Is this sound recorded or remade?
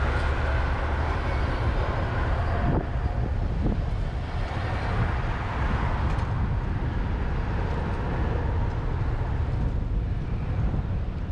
recorded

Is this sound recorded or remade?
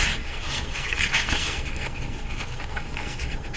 remade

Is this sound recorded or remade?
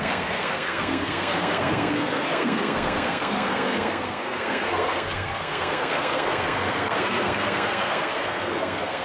remade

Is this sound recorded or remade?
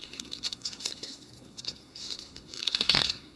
remade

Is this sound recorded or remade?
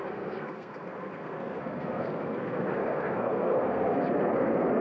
remade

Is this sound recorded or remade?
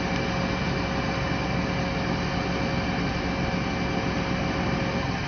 recorded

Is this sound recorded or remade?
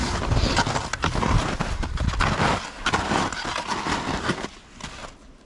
recorded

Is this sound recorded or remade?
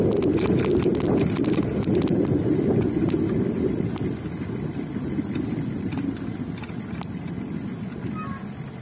recorded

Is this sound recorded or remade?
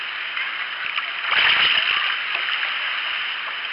recorded